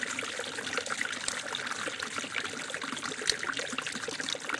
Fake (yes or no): no